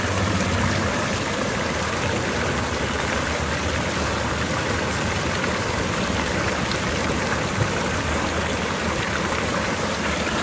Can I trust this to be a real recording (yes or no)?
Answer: no